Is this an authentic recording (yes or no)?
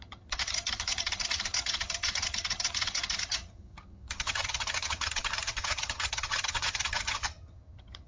no